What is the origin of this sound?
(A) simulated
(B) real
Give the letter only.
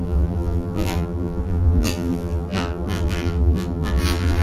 A